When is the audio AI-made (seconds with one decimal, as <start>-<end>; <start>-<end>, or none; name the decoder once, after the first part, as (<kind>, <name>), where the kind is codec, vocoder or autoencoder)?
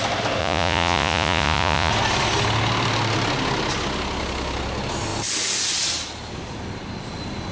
0.4-1.9 (vocoder, Vocos)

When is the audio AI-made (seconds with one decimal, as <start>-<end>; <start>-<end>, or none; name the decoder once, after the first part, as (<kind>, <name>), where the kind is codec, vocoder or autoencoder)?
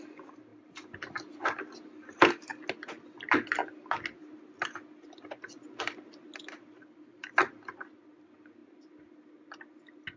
none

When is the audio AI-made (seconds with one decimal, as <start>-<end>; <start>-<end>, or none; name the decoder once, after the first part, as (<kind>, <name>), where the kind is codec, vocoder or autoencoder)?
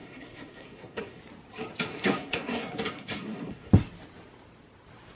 0.0-1.2 (codec, SNAC); 1.9-3.7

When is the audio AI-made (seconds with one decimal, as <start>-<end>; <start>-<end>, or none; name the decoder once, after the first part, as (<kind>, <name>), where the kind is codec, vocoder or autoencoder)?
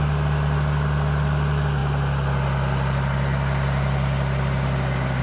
none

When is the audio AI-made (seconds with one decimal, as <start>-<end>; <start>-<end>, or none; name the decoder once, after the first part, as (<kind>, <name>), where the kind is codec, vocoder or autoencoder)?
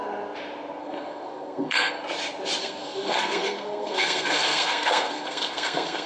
0.8-1.9 (codec, SNAC); 2.6-6.1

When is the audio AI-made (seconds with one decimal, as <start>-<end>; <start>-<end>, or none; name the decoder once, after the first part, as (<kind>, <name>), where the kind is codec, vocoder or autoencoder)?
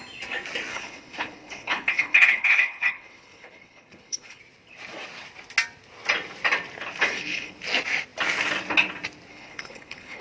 0.7-4.4 (codec, HILCodec); 7.0-7.6; 9.3-10.2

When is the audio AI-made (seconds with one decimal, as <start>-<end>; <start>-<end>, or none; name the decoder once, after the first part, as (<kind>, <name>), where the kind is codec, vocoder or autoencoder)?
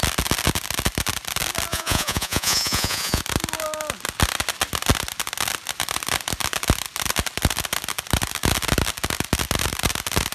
1.7-3.2 (vocoder, Vocos)